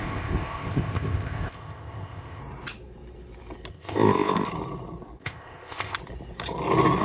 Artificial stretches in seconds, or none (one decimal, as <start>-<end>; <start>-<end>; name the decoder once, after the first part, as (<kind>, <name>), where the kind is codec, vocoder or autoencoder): 0.0-2.4 (codec, ZipCodec); 3.7-4.5; 5.2-6.0